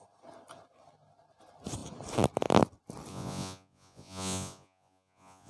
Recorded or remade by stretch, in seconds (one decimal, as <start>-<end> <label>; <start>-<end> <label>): 0.0-3.1 recorded; 3.1-5.5 remade